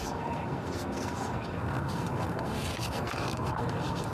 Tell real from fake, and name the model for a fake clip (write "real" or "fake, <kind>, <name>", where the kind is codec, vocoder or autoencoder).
fake, codec, SNAC